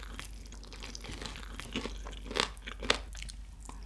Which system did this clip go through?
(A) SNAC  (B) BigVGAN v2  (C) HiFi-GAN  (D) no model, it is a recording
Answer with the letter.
D